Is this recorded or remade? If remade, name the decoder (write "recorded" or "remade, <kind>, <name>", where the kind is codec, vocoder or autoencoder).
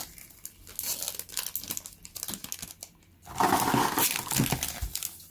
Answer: recorded